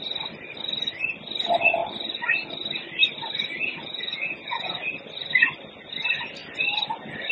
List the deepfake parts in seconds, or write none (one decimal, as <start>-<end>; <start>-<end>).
3.7-4.9